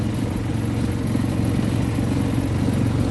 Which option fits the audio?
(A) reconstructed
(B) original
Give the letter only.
B